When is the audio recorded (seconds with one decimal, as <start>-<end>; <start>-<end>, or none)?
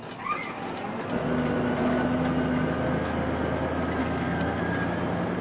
0.0-4.0; 4.6-5.4